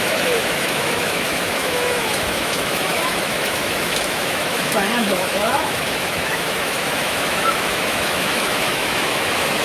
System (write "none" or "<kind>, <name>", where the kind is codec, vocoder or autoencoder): autoencoder, DAC-VAE